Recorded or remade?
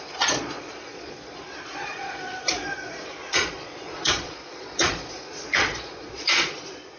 remade